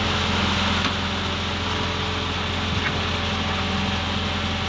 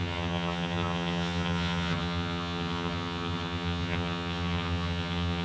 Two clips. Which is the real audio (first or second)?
first